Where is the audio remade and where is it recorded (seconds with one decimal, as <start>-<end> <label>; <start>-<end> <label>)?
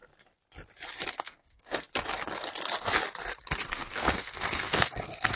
0.0-1.1 recorded; 1.1-1.7 remade; 1.7-3.5 recorded; 3.5-5.4 remade